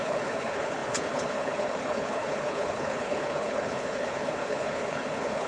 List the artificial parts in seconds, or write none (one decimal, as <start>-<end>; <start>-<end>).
0.0-5.5